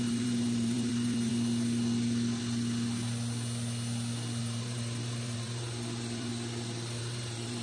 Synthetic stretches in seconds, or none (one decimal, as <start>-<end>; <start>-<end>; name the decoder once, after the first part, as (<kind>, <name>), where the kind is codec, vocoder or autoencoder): 0.0-1.3 (vocoder, BigVGAN v2); 4.4-6.3; 7.0-7.6